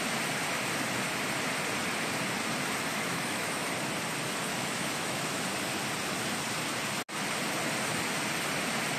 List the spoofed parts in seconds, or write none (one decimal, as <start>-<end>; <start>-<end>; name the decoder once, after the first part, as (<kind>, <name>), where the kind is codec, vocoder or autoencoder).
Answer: 2.9-3.7 (autoencoder, DAC-VAE); 4.5-5.4